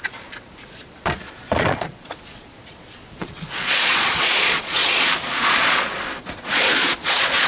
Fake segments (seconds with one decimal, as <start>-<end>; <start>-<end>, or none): 0.0-4.8; 5.3-7.5